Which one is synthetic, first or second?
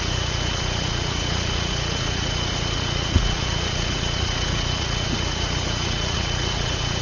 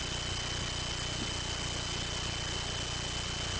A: first